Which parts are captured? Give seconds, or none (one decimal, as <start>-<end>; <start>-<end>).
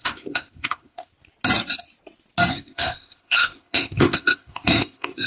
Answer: 1.1-2.5